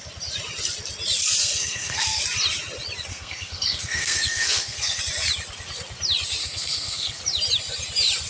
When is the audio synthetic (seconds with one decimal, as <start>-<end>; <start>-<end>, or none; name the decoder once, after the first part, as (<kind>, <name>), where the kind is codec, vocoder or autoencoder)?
1.4-2.2 (codec, SNAC); 3.1-5.0; 6.4-7.2